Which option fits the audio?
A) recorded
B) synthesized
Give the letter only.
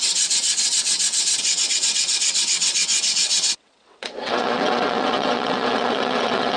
B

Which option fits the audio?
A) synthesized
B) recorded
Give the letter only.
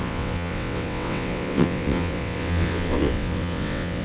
A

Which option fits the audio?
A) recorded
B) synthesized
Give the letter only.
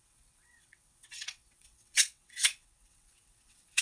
B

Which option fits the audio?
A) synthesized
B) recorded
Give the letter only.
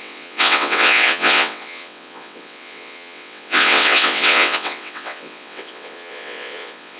A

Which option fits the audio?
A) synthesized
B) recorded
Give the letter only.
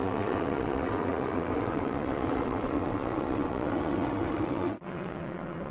A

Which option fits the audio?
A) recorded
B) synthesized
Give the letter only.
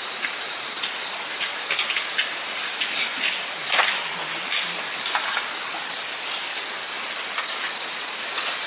A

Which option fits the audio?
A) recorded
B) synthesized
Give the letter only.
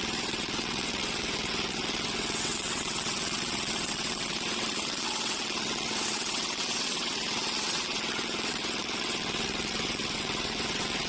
B